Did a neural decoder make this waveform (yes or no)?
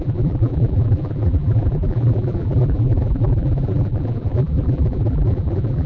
yes